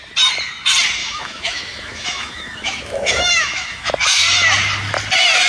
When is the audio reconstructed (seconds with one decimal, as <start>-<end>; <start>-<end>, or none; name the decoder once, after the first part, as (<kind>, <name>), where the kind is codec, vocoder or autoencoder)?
1.0-3.9 (autoencoder, DAC-VAE)